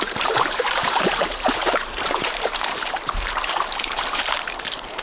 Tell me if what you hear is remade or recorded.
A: remade